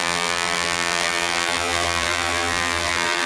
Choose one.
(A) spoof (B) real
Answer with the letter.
A